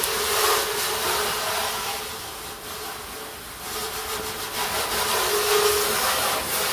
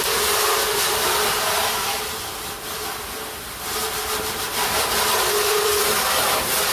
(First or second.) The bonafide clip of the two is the first